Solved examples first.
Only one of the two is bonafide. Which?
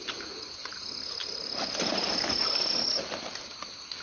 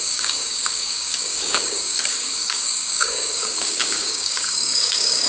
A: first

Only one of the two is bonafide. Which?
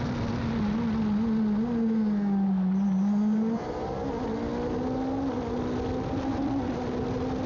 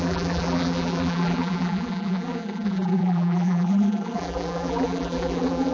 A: first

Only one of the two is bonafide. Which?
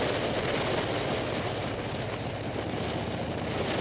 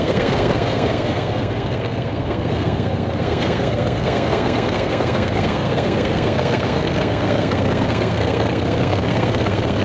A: first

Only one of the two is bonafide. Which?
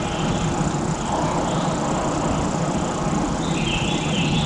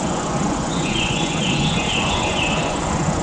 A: first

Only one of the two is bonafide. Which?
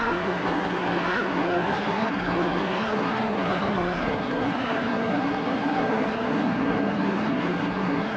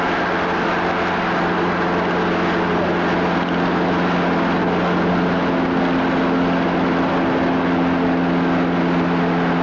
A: second